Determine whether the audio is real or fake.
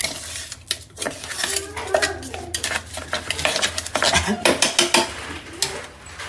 real